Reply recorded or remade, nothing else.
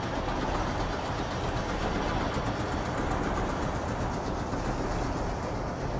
recorded